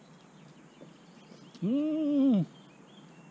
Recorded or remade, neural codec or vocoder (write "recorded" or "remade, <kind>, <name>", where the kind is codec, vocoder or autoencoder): recorded